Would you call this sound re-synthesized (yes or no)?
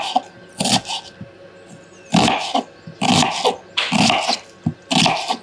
no